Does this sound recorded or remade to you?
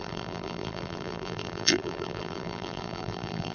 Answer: remade